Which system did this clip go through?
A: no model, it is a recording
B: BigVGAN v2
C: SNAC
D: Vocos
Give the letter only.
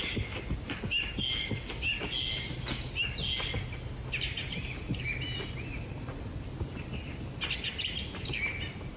A